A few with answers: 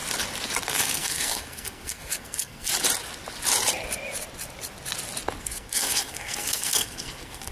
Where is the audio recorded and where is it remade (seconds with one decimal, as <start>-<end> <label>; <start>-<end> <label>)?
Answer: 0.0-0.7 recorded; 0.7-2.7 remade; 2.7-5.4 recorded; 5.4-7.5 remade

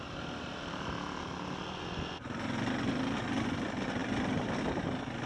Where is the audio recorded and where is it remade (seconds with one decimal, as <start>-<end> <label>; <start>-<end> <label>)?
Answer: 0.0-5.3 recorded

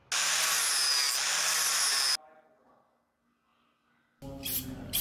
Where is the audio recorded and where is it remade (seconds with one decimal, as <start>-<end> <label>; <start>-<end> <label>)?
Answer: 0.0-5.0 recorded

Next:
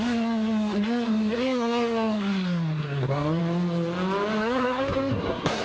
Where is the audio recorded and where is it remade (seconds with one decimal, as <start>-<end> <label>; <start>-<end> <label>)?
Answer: 0.0-3.4 remade; 3.4-4.4 recorded; 4.4-5.6 remade

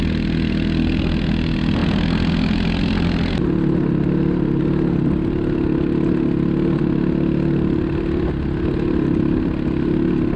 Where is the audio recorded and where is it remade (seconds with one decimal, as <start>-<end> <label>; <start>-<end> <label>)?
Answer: 0.0-10.4 recorded

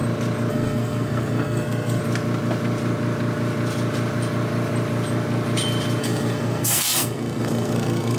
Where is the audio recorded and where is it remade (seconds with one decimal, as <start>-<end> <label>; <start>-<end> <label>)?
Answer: 0.0-0.5 recorded; 0.5-2.0 remade; 2.0-6.0 recorded; 6.0-8.2 remade